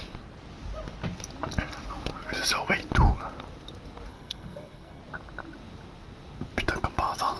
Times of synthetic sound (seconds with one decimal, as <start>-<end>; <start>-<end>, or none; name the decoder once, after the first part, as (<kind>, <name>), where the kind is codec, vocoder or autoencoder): 4.1-5.0 (codec, SNAC)